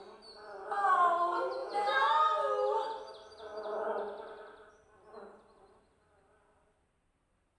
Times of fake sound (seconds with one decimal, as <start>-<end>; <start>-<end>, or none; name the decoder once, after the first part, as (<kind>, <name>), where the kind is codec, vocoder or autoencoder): 1.6-2.1 (vocoder, Vocos)